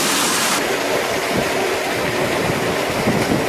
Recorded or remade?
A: recorded